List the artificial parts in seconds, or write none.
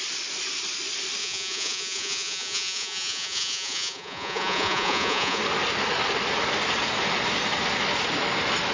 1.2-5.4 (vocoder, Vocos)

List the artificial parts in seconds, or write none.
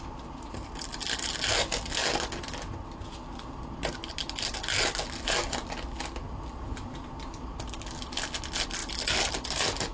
none